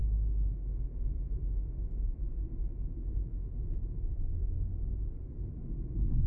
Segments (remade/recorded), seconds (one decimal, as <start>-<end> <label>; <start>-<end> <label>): 0.0-0.9 recorded; 0.9-2.2 remade; 2.2-2.9 recorded; 2.9-6.3 remade